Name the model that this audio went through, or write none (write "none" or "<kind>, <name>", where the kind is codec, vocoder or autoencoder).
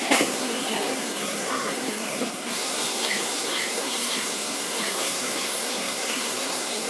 codec, SNAC